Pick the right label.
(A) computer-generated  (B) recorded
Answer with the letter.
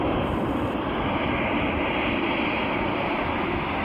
B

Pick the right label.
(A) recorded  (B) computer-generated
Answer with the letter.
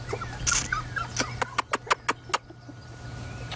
A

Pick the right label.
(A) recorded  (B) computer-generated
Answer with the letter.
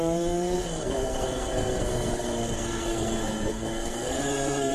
B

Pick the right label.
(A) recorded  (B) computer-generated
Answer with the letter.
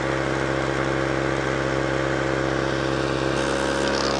A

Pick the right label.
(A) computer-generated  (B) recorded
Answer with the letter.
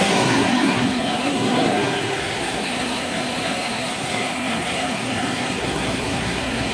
A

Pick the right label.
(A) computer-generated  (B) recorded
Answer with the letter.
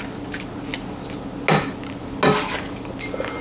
B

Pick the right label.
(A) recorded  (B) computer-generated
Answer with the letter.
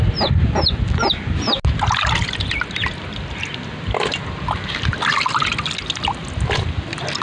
A